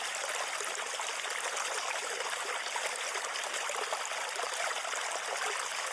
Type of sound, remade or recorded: recorded